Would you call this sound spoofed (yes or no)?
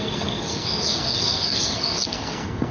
yes